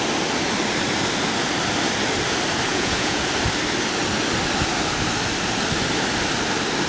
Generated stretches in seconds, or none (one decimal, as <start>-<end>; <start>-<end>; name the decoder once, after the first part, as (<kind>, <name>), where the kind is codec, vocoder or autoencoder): 2.7-3.2 (vocoder, Vocos)